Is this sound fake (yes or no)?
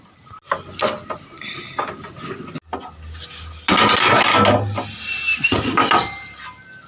no